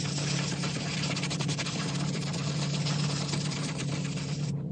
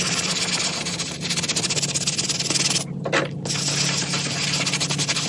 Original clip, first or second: second